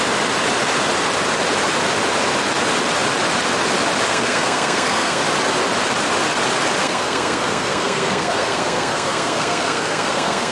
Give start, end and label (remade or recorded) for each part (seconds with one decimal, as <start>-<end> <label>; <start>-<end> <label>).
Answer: 0.0-4.1 recorded; 4.1-5.2 remade; 5.2-6.8 recorded; 6.8-10.5 remade